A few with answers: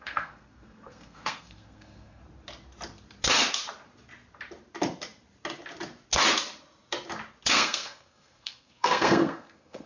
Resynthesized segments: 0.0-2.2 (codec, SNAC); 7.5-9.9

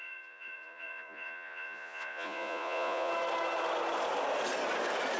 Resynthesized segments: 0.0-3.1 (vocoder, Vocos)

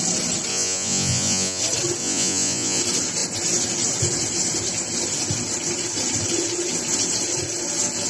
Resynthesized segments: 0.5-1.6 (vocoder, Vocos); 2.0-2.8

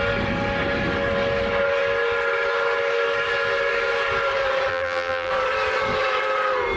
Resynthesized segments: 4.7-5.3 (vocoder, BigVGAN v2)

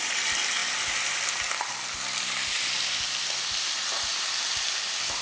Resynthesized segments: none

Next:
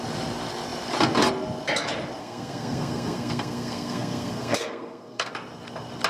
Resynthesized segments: 2.2-5.3 (codec, SNAC)